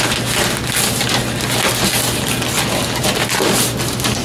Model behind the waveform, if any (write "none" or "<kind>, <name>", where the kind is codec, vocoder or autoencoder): none